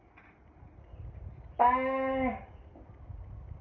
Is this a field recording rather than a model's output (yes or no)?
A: yes